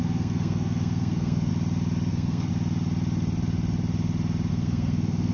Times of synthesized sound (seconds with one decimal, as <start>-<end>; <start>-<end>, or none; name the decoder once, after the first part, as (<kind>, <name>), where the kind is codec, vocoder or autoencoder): 0.0-1.5 (codec, SNAC); 2.1-2.5; 4.5-5.3